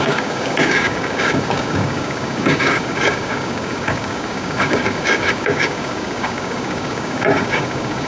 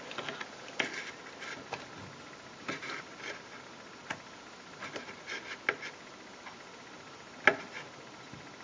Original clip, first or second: second